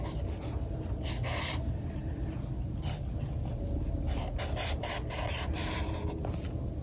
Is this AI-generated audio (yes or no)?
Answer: no